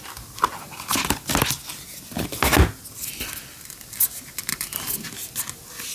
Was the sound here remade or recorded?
recorded